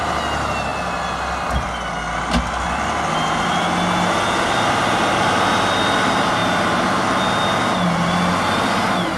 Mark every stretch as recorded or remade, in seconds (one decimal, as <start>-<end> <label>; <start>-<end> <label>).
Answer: 0.0-9.2 recorded